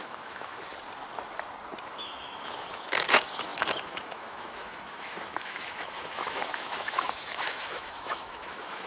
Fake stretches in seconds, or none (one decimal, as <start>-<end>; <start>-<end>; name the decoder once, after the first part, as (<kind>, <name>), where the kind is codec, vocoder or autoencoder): 0.0-0.7 (autoencoder, DAC-VAE); 1.8-8.9